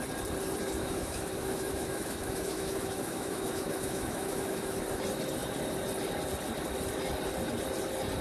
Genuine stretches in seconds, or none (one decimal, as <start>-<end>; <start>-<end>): 0.0-0.8; 4.8-8.2